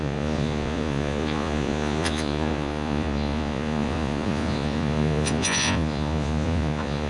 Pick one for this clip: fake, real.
fake